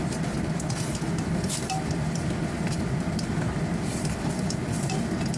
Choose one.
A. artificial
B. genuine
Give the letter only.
B